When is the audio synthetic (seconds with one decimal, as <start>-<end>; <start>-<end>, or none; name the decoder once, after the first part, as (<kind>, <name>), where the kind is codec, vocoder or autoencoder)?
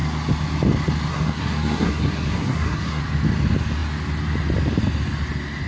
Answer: 1.1-3.0 (codec, SNAC)